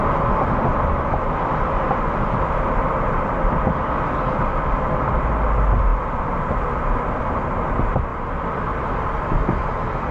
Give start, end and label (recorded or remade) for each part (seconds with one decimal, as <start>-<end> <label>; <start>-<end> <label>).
0.0-2.9 remade; 2.9-10.1 recorded